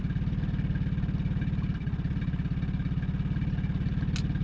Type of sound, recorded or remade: recorded